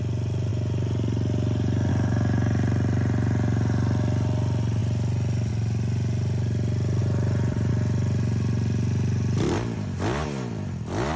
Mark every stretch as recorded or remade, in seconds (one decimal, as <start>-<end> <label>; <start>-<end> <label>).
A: 0.0-0.5 recorded; 0.5-1.9 remade; 1.9-4.8 recorded; 4.8-5.5 remade; 5.5-7.0 recorded; 7.0-7.7 remade; 7.7-11.2 recorded